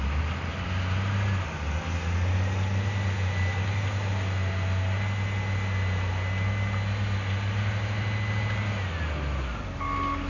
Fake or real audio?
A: real